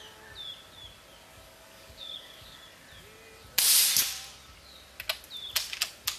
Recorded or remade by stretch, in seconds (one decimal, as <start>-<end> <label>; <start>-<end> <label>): 0.0-1.3 recorded; 1.3-2.6 remade; 2.6-6.2 recorded